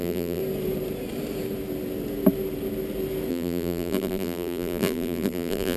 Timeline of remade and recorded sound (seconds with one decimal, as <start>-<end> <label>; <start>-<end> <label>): 0.0-0.4 remade; 0.4-3.3 recorded; 3.3-5.8 remade